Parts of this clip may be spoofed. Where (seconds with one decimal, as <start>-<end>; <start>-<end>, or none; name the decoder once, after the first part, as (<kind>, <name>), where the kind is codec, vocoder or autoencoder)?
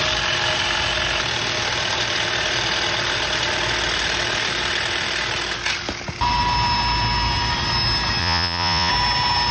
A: 8.2-8.9 (vocoder, Vocos)